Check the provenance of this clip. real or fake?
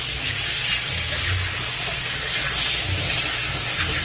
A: real